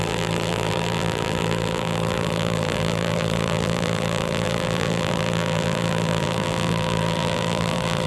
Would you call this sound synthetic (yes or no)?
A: yes